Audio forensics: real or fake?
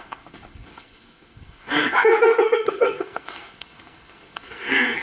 fake